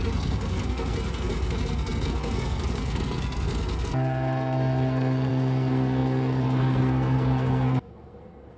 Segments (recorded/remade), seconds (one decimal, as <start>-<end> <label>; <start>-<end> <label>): 0.0-8.6 remade